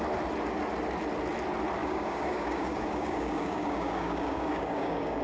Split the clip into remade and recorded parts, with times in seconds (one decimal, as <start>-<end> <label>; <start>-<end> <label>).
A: 0.0-1.8 recorded; 1.8-5.2 remade